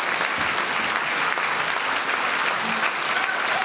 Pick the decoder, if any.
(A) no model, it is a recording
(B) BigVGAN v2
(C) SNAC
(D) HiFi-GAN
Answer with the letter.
A